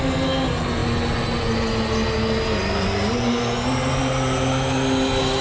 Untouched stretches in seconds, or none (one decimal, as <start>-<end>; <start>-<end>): 0.0-5.4